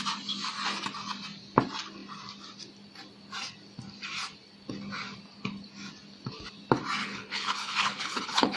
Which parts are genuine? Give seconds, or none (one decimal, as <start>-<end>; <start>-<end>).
0.0-7.0